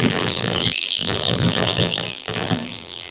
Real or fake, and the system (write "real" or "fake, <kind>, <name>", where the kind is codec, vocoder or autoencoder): fake, vocoder, BigVGAN v2